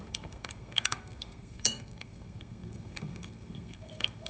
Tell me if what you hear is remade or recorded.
remade